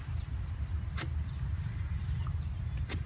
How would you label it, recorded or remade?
recorded